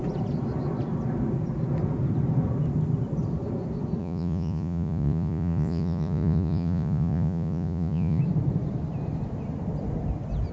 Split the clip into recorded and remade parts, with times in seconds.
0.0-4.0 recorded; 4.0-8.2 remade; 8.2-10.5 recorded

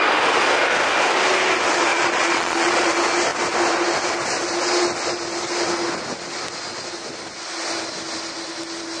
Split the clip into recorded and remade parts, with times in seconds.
0.0-1.9 recorded; 1.9-2.9 remade; 2.9-9.0 recorded

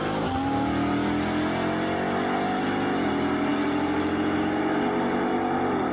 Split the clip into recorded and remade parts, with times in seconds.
0.0-5.9 recorded

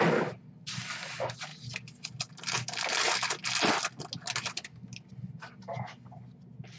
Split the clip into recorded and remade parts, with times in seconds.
0.0-6.8 recorded

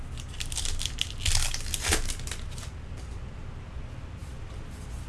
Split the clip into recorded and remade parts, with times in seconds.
0.0-5.1 recorded

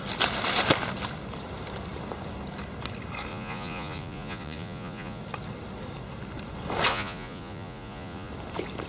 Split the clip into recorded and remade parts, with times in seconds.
0.0-3.3 recorded; 3.3-5.2 remade; 5.2-6.9 recorded; 6.9-8.3 remade; 8.3-8.9 recorded